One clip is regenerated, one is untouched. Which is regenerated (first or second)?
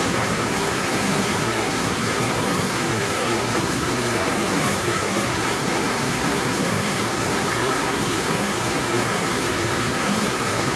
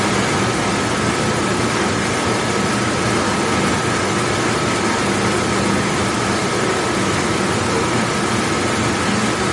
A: first